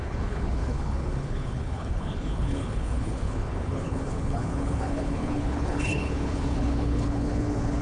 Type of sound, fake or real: fake